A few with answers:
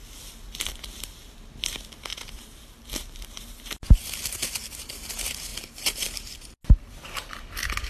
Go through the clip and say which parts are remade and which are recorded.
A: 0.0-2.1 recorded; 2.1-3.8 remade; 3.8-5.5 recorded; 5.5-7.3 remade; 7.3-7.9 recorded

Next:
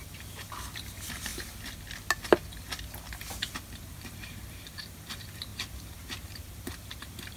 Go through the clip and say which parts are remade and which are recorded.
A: 0.0-1.3 remade; 1.3-3.5 recorded; 3.5-7.4 remade

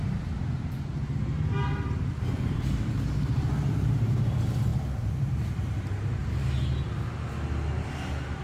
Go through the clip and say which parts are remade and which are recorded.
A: 0.0-1.0 remade; 1.0-2.2 recorded; 2.2-4.7 remade; 4.7-5.6 recorded; 5.6-6.2 remade; 6.2-8.4 recorded

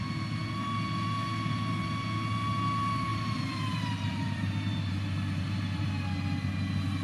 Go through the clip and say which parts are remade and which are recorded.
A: 0.0-3.1 recorded; 3.1-5.9 remade; 5.9-7.0 recorded

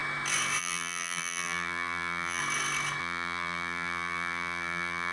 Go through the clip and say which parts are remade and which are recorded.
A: 0.0-0.6 recorded; 0.6-2.4 remade; 2.4-3.0 recorded; 3.0-5.1 remade

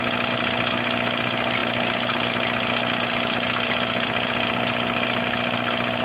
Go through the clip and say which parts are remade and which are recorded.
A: 0.0-6.0 recorded